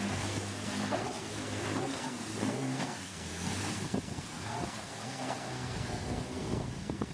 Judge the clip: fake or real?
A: fake